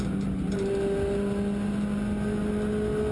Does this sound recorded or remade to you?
recorded